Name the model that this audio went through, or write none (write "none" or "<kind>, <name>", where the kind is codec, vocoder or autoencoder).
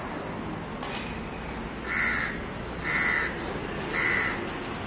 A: none